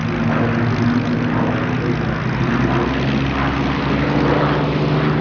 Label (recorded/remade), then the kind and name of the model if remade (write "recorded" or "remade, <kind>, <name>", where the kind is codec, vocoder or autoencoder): recorded